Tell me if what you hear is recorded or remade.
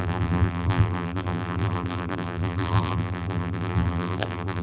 remade